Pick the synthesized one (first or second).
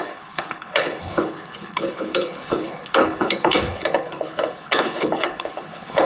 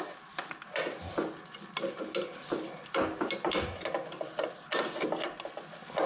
first